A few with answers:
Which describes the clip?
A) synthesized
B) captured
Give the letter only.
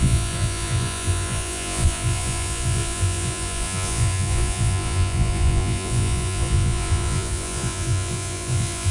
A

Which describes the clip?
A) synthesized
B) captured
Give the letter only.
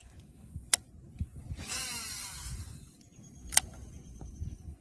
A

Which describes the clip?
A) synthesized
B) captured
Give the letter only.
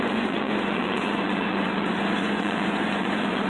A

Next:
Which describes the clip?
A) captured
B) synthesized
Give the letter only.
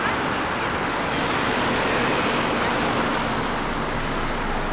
A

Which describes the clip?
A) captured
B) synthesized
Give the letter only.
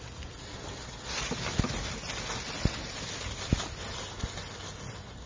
A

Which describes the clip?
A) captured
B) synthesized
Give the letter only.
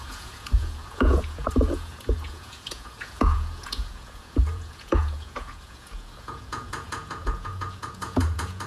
B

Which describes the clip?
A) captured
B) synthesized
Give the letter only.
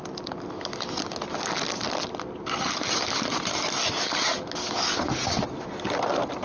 A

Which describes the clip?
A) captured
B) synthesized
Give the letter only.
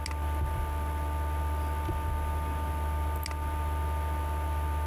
A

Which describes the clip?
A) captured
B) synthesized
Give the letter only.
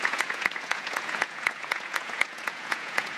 B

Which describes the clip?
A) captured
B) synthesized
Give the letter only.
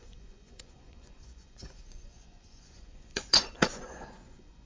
B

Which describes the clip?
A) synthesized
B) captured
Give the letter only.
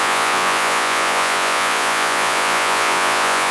A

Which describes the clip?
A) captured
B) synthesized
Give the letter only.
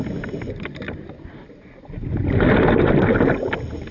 A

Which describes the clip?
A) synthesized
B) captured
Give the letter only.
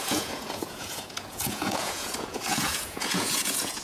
A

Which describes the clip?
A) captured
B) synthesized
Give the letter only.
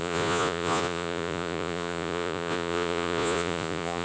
B